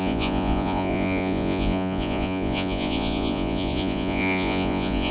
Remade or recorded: remade